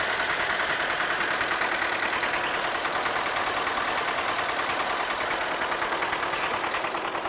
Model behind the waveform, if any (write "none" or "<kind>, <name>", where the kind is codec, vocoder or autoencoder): none